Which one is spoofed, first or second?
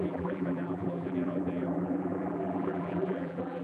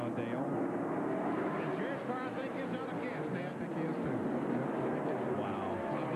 first